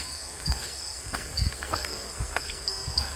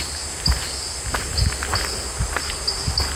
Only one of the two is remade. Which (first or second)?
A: first